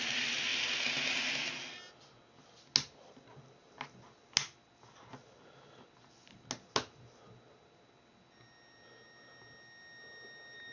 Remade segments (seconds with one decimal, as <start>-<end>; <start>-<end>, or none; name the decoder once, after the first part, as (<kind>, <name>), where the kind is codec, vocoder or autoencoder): none

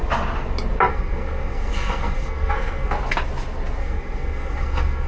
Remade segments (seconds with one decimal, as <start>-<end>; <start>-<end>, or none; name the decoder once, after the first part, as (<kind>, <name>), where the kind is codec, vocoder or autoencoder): 0.9-2.9 (codec, SNAC); 3.8-5.1

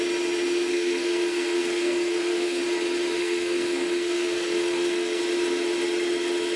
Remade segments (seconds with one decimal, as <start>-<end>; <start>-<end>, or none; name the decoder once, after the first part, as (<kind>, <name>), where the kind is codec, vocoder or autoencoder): 0.7-2.6 (codec, SNAC); 3.2-5.2

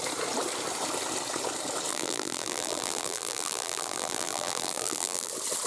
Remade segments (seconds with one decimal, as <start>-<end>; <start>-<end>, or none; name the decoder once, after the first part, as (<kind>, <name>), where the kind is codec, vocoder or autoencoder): 1.9-5.3 (vocoder, BigVGAN v2)

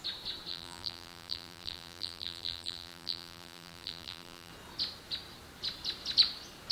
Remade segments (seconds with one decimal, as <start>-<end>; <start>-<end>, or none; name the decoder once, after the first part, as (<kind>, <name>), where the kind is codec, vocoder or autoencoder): 0.5-4.5 (vocoder, BigVGAN v2)

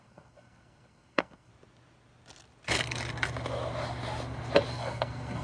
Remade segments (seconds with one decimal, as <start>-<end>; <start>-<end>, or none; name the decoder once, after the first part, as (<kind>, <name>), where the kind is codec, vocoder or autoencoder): 0.0-1.5 (codec, SNAC); 4.7-5.4

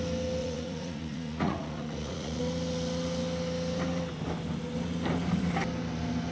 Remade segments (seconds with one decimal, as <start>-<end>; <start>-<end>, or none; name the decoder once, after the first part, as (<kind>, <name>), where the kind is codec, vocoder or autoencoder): 0.4-2.4 (vocoder, Vocos)

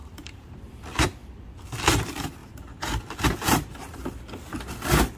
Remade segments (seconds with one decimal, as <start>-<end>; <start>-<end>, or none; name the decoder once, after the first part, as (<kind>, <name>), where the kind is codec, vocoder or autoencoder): 0.0-0.6 (vocoder, BigVGAN v2)